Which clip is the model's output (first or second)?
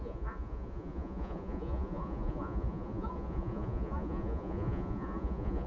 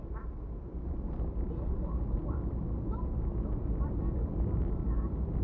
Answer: first